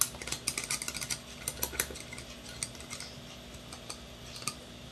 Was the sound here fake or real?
real